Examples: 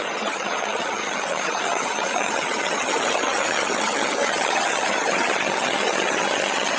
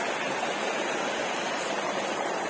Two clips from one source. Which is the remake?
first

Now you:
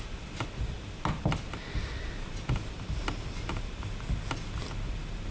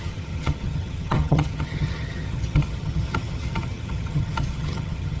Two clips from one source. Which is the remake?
second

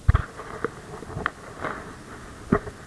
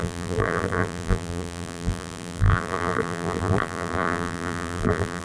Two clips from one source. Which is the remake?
second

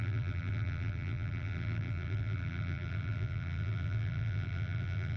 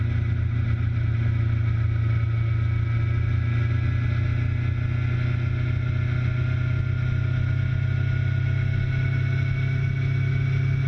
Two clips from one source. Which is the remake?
first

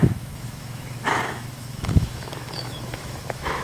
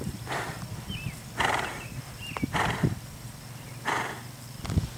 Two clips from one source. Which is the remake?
first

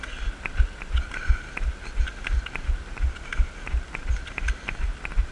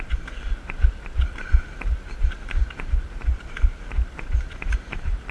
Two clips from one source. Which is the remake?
second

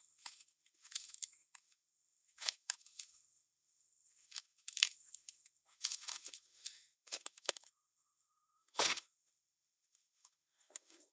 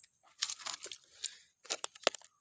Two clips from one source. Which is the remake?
first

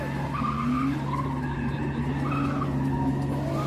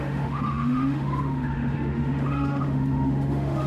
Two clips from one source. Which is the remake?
second